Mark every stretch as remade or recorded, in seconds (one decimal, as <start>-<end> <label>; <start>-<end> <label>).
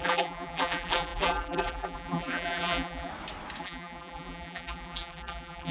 0.0-3.1 remade; 3.1-3.6 recorded; 3.6-5.7 remade